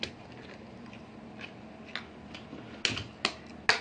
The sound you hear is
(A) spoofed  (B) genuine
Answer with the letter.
B